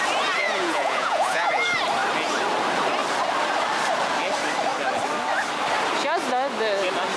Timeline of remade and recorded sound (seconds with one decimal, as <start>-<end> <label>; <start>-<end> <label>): 0.0-0.4 recorded; 0.4-1.5 remade; 1.5-7.2 recorded